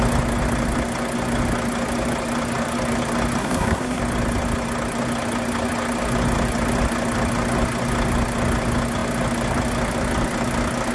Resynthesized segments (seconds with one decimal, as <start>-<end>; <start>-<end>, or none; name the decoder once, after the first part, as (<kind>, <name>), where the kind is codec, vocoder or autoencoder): 3.4-4.0 (codec, SNAC)